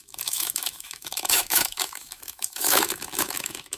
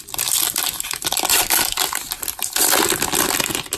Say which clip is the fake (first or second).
first